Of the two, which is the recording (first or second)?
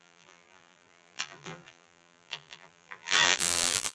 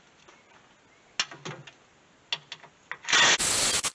second